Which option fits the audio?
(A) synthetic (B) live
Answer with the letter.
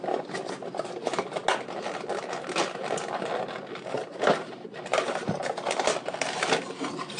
B